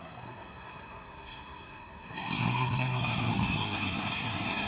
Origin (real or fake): fake